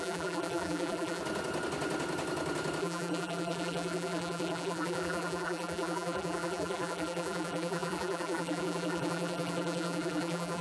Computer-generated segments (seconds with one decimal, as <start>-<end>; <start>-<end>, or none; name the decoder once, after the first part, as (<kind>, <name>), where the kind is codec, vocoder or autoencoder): 0.0-1.2 (vocoder, BigVGAN v2); 2.8-10.6